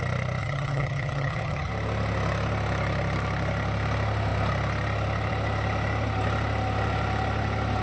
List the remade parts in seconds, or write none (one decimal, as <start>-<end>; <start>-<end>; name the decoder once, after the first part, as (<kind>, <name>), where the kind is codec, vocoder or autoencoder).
0.4-1.7 (vocoder, HiFi-GAN)